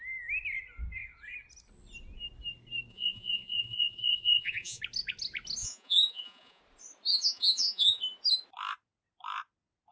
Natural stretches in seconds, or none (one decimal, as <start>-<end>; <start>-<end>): 0.0-2.9; 4.8-5.6; 6.6-7.1; 8.0-9.9